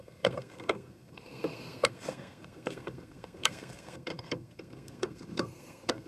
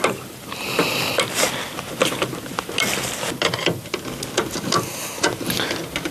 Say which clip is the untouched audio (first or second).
second